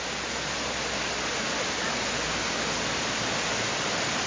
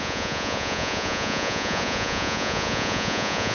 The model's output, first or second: second